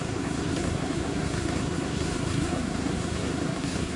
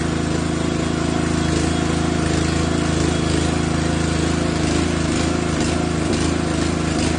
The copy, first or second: first